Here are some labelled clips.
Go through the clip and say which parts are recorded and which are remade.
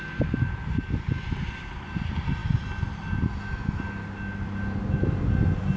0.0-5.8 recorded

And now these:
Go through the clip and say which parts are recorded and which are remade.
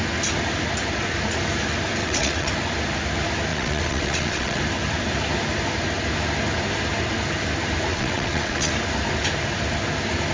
0.0-2.0 recorded; 2.0-2.5 remade; 2.5-3.5 recorded; 3.5-4.6 remade; 4.6-7.9 recorded; 7.9-8.7 remade; 8.7-10.3 recorded